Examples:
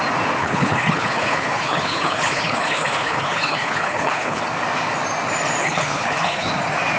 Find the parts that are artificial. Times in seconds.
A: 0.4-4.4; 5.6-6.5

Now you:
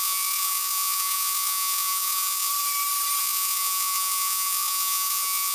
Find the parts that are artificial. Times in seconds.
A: 0.0-2.5; 3.2-5.5

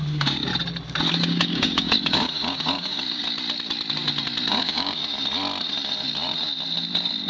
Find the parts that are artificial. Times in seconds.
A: 0.0-0.5; 1.1-3.2; 4.5-5.0

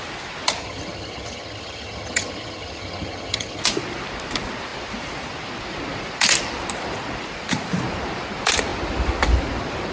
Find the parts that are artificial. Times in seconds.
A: 0.6-3.6

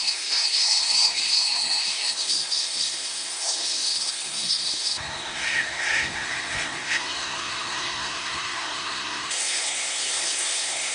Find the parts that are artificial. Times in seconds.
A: 0.0-10.9

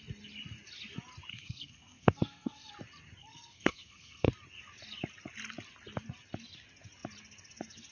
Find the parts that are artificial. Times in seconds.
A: 1.3-2.7; 3.2-4.3